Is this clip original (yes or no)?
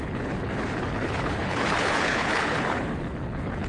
no